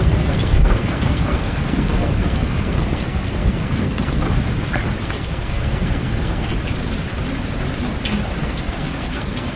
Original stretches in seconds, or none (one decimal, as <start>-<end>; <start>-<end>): 4.2-5.0; 6.5-8.4